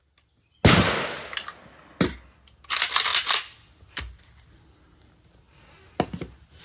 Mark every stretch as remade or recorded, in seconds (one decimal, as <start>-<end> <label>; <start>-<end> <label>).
0.0-6.6 recorded